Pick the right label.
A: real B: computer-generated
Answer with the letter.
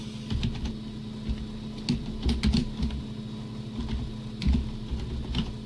A